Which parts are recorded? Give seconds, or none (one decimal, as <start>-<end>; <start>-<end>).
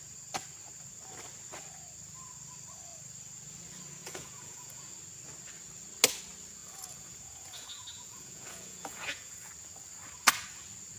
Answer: 0.0-4.0; 4.9-6.6; 9.5-11.0